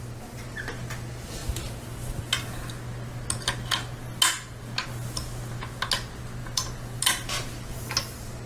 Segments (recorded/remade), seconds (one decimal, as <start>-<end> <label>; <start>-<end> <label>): 0.0-6.4 recorded; 6.4-7.0 remade; 7.0-8.5 recorded